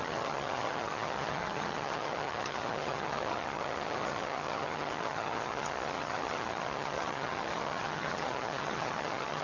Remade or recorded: remade